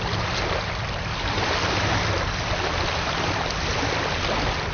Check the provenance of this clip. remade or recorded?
recorded